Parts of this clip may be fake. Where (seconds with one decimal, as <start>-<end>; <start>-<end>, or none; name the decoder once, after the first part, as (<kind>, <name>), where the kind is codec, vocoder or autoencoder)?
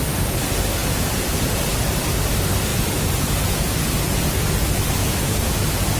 0.8-1.6 (vocoder, Vocos); 2.7-4.5; 5.0-5.6